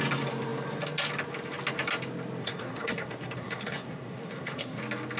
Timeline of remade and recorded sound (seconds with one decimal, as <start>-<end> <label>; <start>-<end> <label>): 0.0-2.4 recorded; 2.4-4.8 remade; 4.8-5.2 recorded